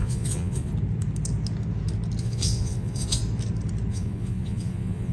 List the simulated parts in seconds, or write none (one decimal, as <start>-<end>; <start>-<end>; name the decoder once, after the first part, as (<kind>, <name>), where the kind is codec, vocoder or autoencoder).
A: 0.0-0.7 (vocoder, Vocos); 2.2-3.2; 3.9-5.1